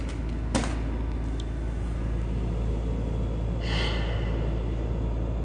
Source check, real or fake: real